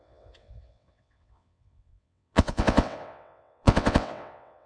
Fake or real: fake